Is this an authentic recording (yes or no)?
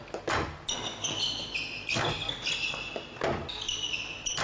yes